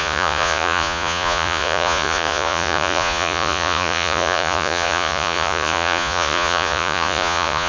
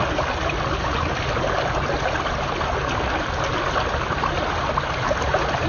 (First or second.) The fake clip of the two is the first